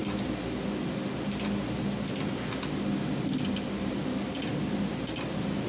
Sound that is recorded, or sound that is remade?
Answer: recorded